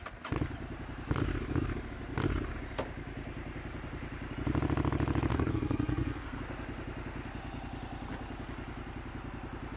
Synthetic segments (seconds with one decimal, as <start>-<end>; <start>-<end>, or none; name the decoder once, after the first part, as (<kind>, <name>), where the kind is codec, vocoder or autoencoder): 5.3-6.4 (codec, SNAC)